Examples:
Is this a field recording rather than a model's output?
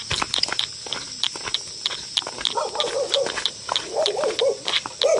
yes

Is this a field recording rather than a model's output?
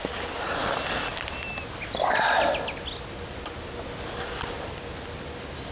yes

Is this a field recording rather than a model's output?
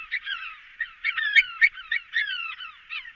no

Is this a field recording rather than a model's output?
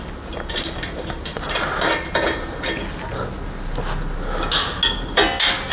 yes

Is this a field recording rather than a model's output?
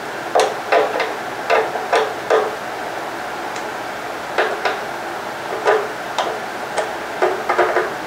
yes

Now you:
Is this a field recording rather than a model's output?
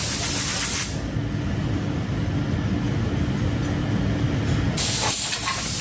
yes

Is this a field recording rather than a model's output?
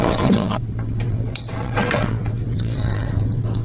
no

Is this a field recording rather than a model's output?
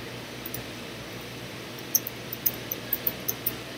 no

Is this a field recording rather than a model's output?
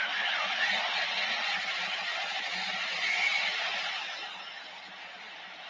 yes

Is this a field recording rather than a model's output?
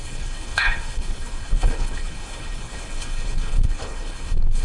no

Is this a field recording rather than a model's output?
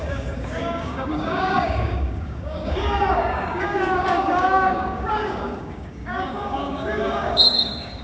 no